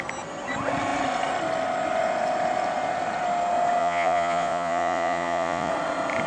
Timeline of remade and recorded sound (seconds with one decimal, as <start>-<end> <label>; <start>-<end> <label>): 0.0-3.8 recorded; 3.8-5.7 remade; 5.7-6.3 recorded